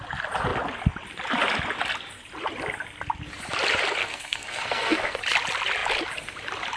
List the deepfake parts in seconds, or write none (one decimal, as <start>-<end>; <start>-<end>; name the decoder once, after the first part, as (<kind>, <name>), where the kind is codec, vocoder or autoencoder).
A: 4.0-5.2 (codec, SNAC)